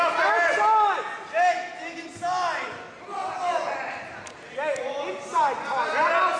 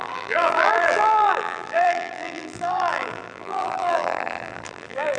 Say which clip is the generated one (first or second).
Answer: second